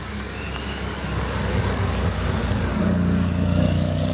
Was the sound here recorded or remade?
remade